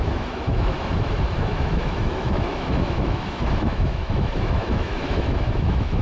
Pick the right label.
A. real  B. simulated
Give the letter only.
B